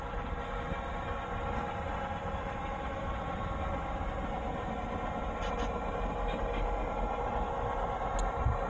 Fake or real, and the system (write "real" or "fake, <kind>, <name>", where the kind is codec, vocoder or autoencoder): real